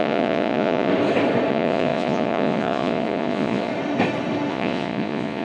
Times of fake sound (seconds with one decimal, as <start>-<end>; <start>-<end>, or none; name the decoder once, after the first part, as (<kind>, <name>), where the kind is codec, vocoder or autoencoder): 0.0-0.9 (vocoder, Vocos); 1.5-3.7; 4.5-5.4